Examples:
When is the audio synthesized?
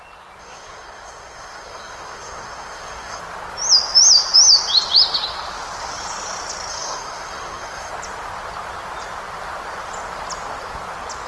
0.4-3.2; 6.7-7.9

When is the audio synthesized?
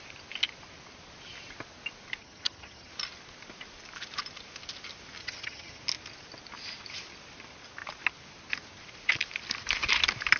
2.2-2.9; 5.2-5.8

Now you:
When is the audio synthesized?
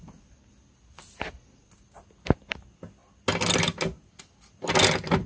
none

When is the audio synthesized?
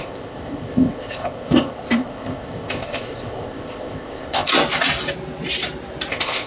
0.0-4.5; 6.1-6.5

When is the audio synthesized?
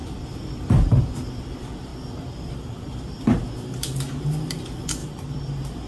0.0-1.5; 1.9-3.2; 5.0-5.5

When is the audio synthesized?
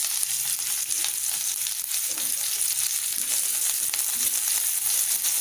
none